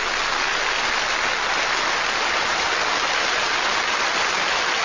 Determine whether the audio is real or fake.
real